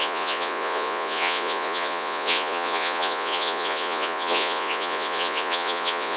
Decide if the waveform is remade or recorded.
remade